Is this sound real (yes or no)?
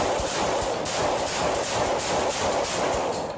no